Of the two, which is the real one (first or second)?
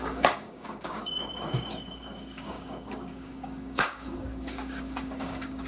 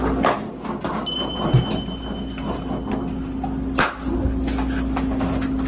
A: second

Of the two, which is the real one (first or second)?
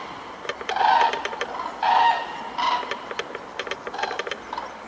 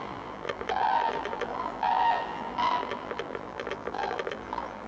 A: first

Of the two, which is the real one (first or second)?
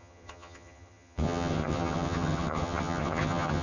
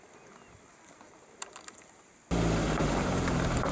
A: second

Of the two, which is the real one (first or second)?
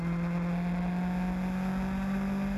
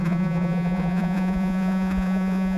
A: first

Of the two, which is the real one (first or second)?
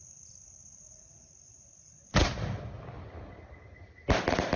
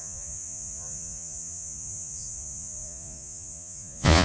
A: first